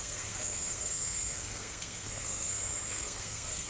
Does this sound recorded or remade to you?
remade